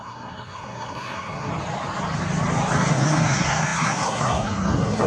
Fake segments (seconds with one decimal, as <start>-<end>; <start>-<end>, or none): 0.0-1.5; 2.9-5.1